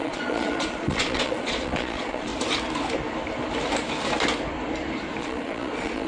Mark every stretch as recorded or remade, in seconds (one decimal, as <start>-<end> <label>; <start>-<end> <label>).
0.0-2.3 remade; 2.3-5.2 recorded; 5.2-6.1 remade